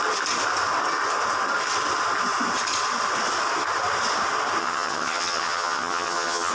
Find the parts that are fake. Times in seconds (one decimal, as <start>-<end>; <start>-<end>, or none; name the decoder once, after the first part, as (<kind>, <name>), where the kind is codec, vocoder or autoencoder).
4.6-6.5 (vocoder, HiFi-GAN)